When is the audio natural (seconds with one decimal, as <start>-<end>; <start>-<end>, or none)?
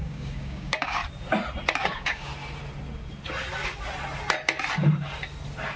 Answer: 1.0-1.8; 2.3-5.8